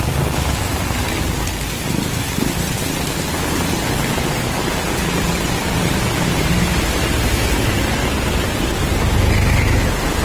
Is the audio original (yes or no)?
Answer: yes